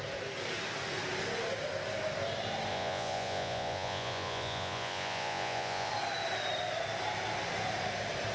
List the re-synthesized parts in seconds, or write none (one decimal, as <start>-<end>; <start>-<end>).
2.7-5.9